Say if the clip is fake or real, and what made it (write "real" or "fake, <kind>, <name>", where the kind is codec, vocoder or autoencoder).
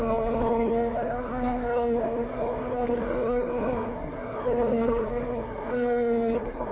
fake, codec, SNAC